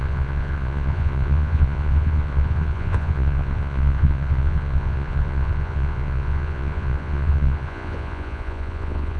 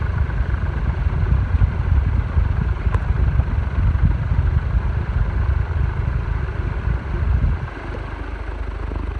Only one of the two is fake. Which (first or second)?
first